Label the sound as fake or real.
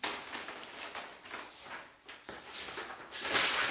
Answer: real